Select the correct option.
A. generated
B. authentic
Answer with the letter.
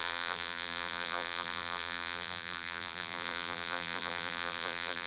A